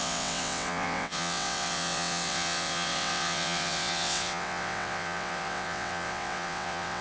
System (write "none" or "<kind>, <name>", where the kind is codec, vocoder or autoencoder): vocoder, WaveNeXt